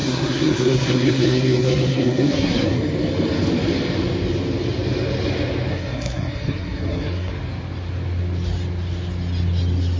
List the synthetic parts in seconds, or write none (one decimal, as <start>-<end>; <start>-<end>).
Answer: 0.0-2.8; 5.7-7.3